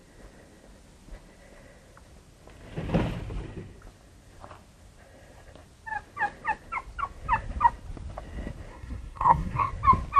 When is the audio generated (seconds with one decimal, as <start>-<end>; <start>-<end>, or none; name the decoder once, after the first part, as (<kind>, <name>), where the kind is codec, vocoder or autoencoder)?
8.7-9.7 (codec, SNAC)